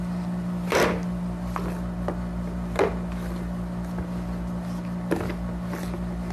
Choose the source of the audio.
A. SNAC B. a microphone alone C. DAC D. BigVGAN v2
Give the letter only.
B